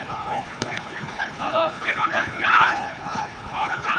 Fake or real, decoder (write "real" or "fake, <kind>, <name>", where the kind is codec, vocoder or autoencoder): fake, codec, HILCodec